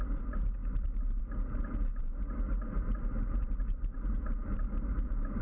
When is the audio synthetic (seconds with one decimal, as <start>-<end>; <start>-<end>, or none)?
0.0-5.4